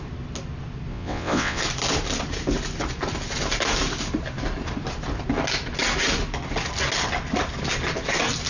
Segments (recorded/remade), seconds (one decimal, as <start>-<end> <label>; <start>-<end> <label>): 0.0-0.9 recorded; 0.9-1.6 remade; 1.6-8.5 recorded